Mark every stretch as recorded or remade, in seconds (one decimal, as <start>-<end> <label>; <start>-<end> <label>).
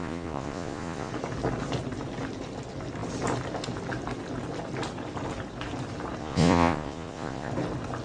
0.0-1.1 remade; 1.1-6.2 recorded; 6.2-7.5 remade; 7.5-8.0 recorded